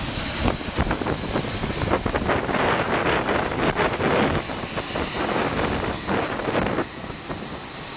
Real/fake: real